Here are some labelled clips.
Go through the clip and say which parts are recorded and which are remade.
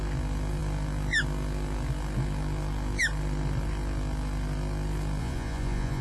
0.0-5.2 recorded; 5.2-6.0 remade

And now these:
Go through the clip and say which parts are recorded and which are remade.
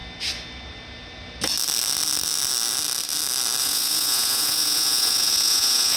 0.0-3.6 recorded; 3.6-6.0 remade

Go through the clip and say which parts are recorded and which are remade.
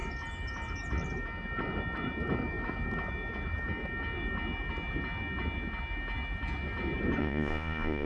0.0-7.2 recorded; 7.2-8.1 remade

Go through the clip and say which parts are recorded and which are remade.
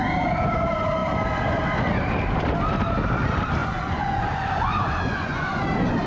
0.0-3.6 recorded; 3.6-5.6 remade; 5.6-6.1 recorded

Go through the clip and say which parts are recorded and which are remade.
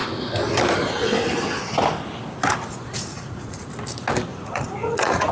0.0-2.7 recorded; 2.7-3.7 remade; 3.7-4.3 recorded; 4.3-5.3 remade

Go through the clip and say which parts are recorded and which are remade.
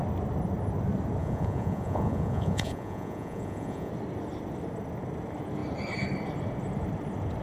0.0-1.2 recorded; 1.2-3.9 remade; 3.9-7.4 recorded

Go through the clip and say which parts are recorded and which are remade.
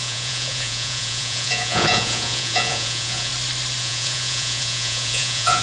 0.0-3.3 remade; 3.3-3.8 recorded; 3.8-5.6 remade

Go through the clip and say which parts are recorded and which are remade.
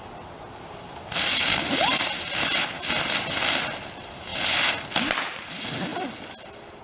0.0-6.8 recorded